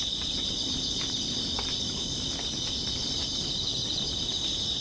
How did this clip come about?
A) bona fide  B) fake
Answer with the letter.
A